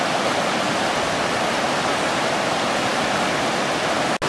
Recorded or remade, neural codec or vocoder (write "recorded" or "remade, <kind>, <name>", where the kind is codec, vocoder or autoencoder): recorded